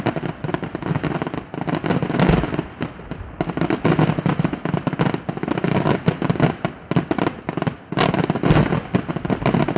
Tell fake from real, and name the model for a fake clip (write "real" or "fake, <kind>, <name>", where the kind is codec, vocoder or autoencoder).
real